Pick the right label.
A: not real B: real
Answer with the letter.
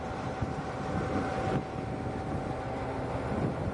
B